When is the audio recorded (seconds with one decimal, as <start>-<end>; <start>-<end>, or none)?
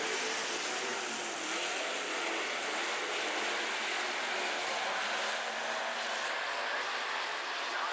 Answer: 0.0-7.9